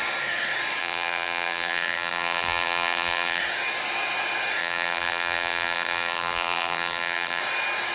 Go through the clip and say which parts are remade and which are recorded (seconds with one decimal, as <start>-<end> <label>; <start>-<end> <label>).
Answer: 0.0-0.8 recorded; 0.8-3.4 remade; 3.4-4.6 recorded; 4.6-7.4 remade; 7.4-7.9 recorded